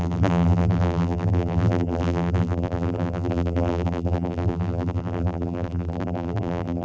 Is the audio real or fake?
fake